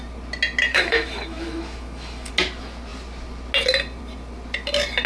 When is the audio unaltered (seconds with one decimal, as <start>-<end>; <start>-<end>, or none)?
0.0-0.7; 2.3-5.1